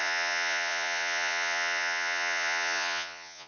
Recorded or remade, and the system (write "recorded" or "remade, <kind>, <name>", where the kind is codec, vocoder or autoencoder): remade, vocoder, Vocos